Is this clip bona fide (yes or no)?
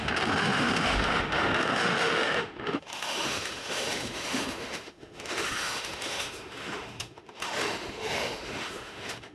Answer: no